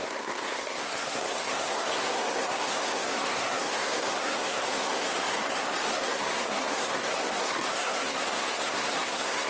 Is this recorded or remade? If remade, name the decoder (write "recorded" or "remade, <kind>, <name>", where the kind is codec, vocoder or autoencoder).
remade, codec, SNAC